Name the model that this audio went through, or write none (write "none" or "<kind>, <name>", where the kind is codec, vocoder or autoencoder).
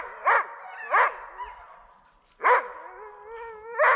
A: none